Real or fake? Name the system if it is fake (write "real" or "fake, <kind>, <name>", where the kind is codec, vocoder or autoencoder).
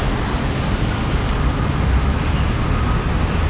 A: real